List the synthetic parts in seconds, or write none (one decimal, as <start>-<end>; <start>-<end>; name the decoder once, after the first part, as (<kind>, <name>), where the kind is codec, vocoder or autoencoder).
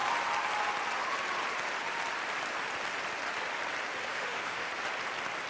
4.0-4.7 (autoencoder, DAC-VAE)